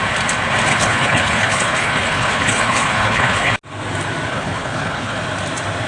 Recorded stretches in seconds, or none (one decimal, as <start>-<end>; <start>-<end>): 0.0-0.7; 3.5-4.3; 5.2-5.9

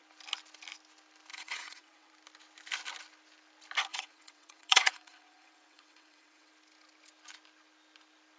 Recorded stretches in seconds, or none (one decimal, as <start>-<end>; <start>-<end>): 0.0-1.3; 2.1-3.9; 6.5-8.4

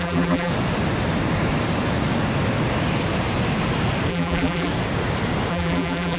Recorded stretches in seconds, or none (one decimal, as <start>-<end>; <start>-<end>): 0.5-4.1; 4.7-5.5

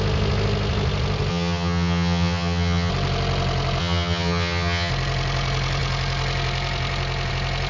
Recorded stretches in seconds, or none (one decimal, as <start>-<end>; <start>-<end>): 0.0-1.3; 2.9-3.8; 4.9-7.7

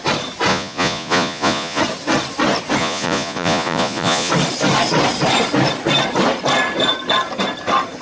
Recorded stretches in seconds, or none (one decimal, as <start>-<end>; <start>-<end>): 0.0-0.5; 1.8-2.8; 4.3-8.0

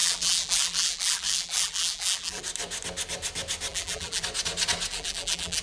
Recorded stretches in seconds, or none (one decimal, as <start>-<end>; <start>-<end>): 2.4-3.7; 4.2-4.9